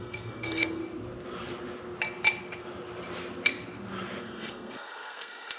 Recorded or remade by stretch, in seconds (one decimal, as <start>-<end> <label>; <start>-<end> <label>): 0.0-0.8 remade; 0.8-4.2 recorded; 4.2-5.6 remade